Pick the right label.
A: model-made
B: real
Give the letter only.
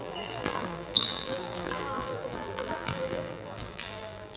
A